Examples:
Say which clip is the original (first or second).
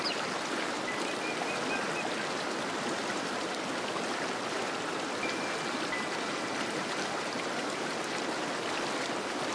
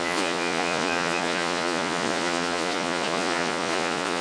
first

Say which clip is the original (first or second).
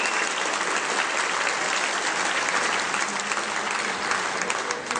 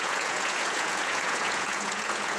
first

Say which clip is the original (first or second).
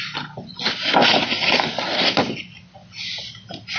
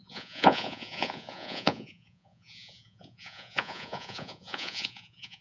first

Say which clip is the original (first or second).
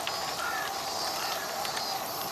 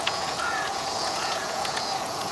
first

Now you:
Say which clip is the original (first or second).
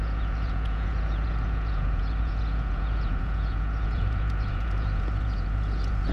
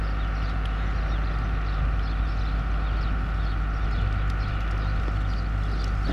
second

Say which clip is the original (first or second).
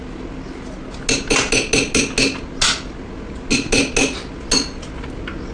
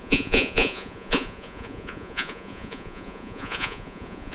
first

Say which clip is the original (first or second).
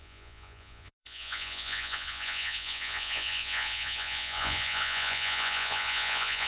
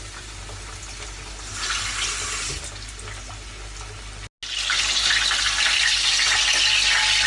second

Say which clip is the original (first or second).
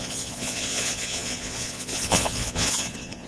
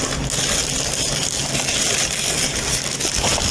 second